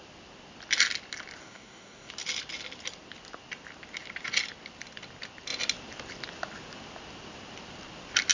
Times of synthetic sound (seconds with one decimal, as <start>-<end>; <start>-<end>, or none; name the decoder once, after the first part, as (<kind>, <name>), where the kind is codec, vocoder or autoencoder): 1.4-2.1 (codec, DAC)